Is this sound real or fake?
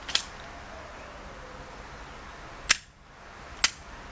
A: real